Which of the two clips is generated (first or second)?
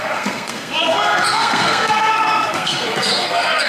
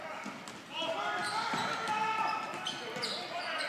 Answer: first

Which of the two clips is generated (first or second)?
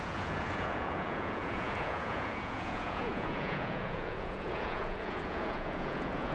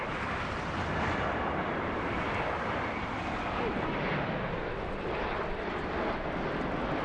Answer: first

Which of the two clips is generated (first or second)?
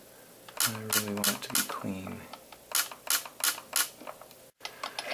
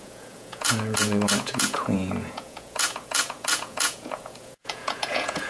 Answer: second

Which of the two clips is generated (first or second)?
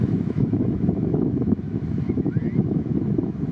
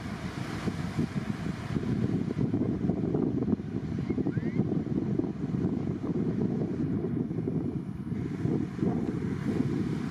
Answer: first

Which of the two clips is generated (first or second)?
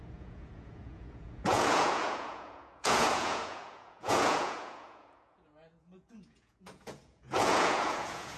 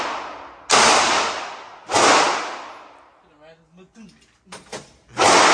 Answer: first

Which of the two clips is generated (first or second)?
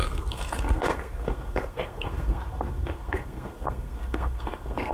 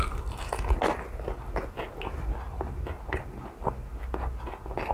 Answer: first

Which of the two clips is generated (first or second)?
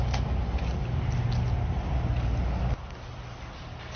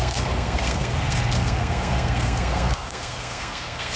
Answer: second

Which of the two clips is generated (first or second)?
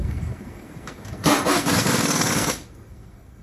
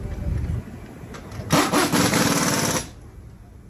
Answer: first